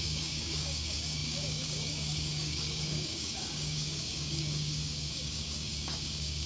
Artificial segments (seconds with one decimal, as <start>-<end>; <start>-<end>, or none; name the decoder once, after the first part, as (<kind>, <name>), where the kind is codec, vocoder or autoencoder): 0.0-6.5 (codec, DAC)